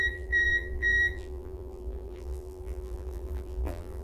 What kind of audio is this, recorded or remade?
remade